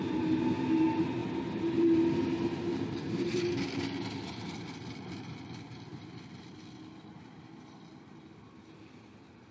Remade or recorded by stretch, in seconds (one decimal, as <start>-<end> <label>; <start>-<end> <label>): 0.0-1.2 recorded; 1.2-4.6 remade; 4.6-5.9 recorded; 5.9-7.0 remade; 7.0-9.5 recorded

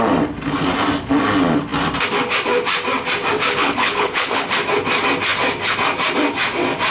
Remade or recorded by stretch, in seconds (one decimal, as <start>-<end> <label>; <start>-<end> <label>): 0.0-3.5 recorded; 3.5-4.5 remade; 4.5-6.9 recorded

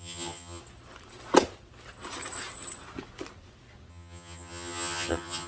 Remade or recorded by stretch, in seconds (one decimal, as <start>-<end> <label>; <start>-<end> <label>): 0.0-0.6 remade; 0.6-3.9 recorded; 3.9-5.5 remade

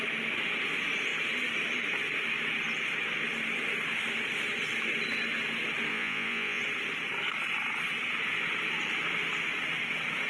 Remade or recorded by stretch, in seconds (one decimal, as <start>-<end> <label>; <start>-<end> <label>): 0.0-5.9 recorded; 5.9-6.6 remade; 6.6-10.3 recorded

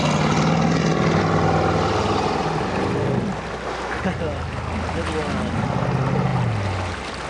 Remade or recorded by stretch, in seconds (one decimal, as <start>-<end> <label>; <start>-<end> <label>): 0.0-7.3 recorded

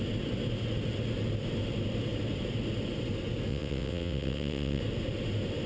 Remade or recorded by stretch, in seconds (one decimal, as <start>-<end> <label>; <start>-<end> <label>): 0.0-3.5 recorded; 3.5-4.8 remade; 4.8-5.7 recorded